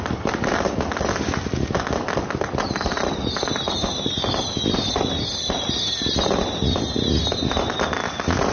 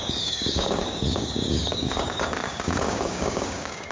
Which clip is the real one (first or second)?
first